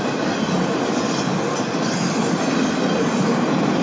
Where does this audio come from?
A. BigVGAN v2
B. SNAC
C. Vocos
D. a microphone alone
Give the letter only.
D